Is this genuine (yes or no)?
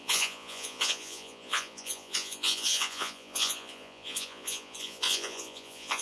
no